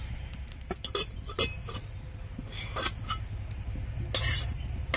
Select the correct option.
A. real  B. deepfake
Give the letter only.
A